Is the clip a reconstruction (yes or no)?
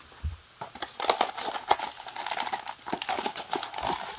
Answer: no